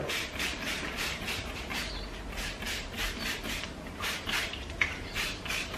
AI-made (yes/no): yes